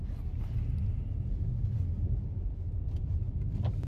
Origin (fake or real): real